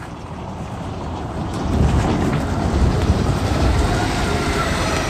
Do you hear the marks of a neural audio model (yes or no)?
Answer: yes